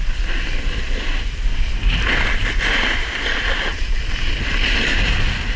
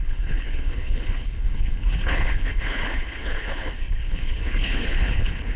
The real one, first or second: first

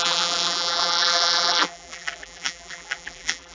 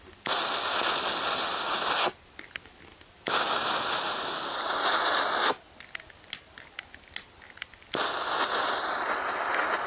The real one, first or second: second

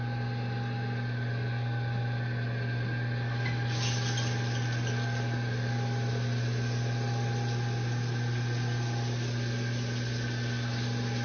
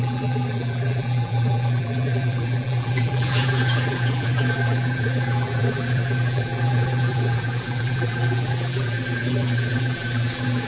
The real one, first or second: first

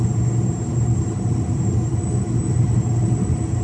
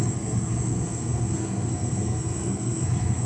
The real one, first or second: first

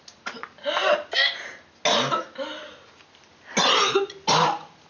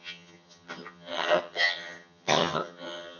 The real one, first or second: first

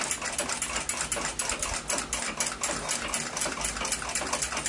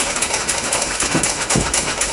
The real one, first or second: first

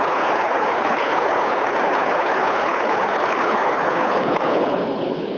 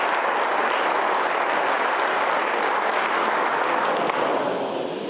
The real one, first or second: second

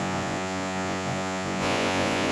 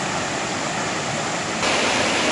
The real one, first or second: second